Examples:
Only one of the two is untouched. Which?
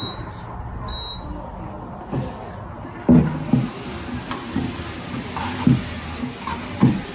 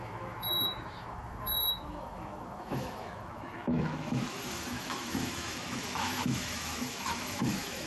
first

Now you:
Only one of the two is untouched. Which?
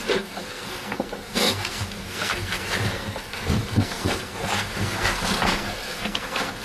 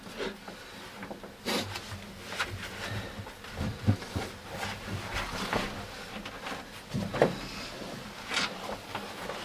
second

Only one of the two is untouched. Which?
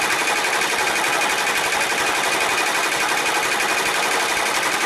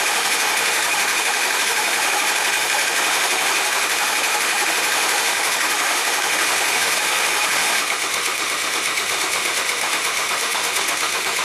first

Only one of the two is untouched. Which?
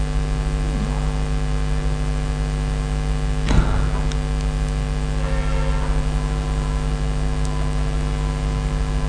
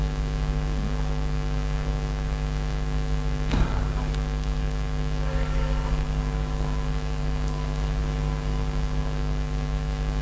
first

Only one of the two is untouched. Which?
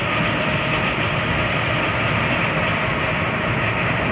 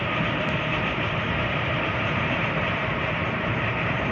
first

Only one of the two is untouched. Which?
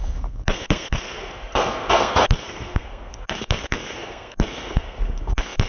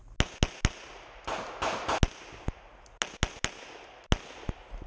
second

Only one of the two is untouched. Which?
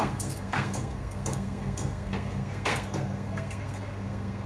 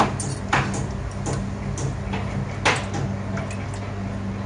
second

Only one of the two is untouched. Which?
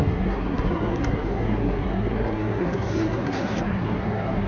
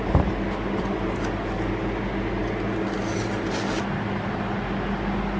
second